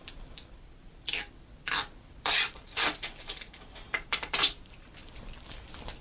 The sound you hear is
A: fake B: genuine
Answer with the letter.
A